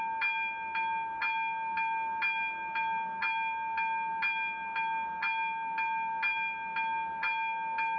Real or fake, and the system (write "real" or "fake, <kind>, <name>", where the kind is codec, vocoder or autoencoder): real